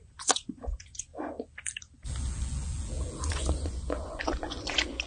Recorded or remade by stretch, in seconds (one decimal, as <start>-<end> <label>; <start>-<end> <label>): 0.0-1.1 remade; 1.1-3.3 recorded; 3.3-5.1 remade